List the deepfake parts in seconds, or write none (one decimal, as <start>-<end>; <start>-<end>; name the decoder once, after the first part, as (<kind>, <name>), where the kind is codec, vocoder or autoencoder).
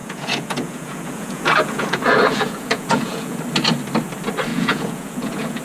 0.0-3.4 (vocoder, Vocos); 4.5-5.6